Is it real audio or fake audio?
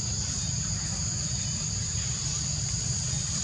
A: real